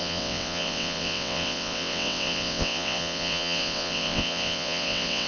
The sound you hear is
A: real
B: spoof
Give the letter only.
B